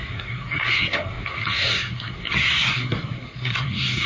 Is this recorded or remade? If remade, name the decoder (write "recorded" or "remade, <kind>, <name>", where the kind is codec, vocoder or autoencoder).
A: remade, codec, SNAC